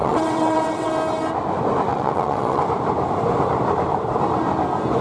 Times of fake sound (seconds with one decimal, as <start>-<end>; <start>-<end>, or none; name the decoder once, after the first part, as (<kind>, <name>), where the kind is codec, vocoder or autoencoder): 0.0-0.9 (vocoder, WaveNeXt); 1.9-2.6